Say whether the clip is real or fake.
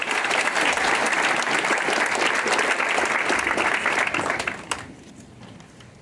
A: real